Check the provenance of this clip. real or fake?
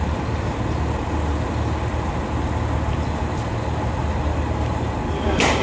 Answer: real